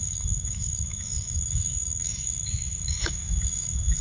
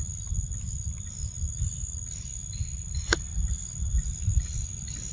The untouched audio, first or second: second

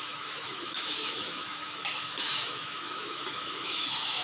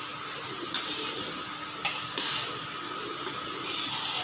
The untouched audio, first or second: second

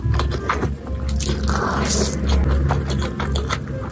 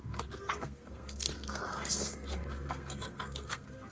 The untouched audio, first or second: first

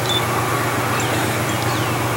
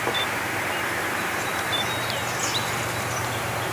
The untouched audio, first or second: first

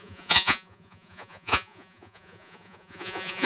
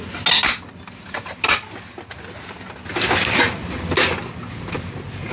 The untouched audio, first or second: second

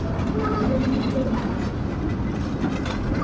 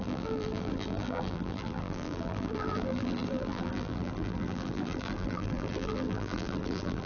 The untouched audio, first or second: first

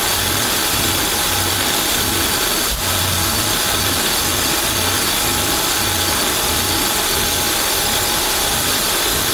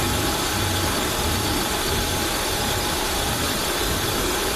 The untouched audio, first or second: first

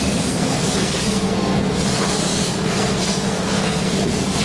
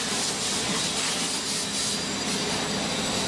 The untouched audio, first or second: second